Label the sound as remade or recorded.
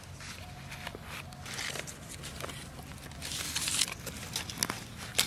recorded